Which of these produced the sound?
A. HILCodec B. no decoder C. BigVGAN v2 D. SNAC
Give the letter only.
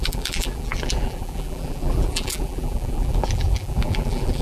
C